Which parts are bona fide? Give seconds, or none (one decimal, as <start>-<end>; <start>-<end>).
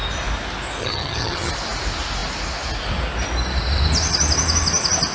0.0-0.8; 1.5-5.1